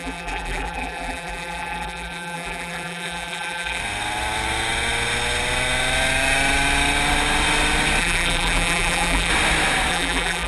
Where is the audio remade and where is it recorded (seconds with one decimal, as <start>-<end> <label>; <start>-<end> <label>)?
0.0-3.8 remade; 3.8-8.0 recorded; 8.0-9.3 remade; 9.3-9.9 recorded; 9.9-10.5 remade

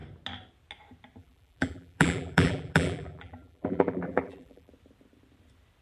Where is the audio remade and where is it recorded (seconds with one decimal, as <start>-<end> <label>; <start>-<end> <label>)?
0.0-1.2 recorded; 1.2-4.7 remade; 4.7-5.8 recorded

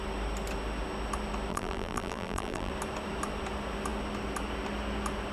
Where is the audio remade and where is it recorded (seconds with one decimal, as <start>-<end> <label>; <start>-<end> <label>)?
0.0-1.5 recorded; 1.5-2.7 remade; 2.7-5.3 recorded

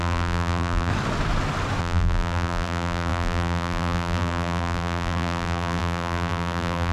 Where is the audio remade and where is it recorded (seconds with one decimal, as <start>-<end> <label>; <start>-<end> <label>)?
0.0-0.9 remade; 0.9-1.8 recorded; 1.8-6.9 remade

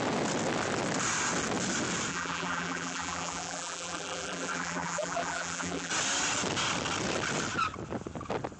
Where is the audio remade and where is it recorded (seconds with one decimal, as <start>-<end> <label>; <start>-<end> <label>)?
0.0-2.1 recorded; 2.1-5.9 remade; 5.9-8.6 recorded

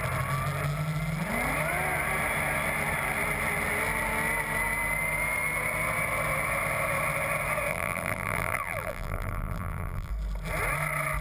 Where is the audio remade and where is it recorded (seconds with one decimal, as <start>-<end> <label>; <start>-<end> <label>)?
0.0-7.7 recorded; 7.7-10.1 remade; 10.1-11.2 recorded

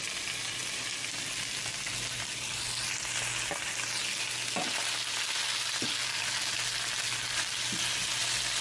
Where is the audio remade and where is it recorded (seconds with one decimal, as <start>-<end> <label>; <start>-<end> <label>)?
0.0-8.6 recorded

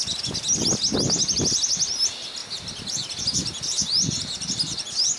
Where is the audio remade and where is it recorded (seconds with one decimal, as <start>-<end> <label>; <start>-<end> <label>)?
0.0-5.2 recorded